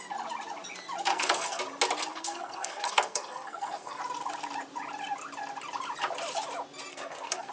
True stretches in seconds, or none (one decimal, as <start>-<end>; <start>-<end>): 0.0-1.1; 1.6-2.1; 4.0-6.9